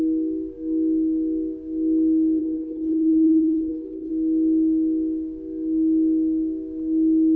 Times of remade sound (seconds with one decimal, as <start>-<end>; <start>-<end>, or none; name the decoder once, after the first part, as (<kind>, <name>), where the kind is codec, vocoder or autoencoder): 2.4-4.1 (codec, HILCodec)